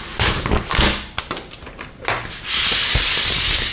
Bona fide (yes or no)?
yes